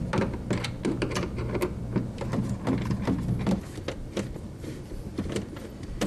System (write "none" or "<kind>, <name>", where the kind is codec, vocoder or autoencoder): none